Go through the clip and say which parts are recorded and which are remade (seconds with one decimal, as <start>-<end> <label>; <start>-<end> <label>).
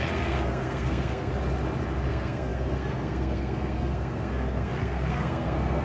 0.0-1.3 remade; 1.3-2.1 recorded; 2.1-5.8 remade